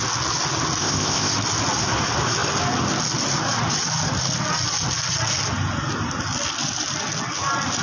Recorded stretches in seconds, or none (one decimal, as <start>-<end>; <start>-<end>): 0.0-0.8; 1.3-7.8